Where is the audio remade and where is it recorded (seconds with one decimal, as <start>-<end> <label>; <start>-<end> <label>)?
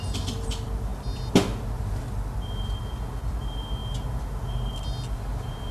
0.0-5.7 recorded